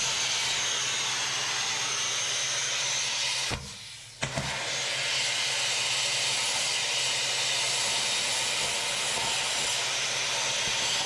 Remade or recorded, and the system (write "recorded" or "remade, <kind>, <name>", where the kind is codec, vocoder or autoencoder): recorded